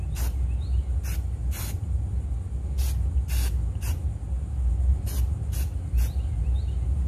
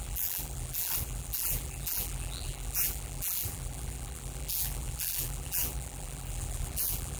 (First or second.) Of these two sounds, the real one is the first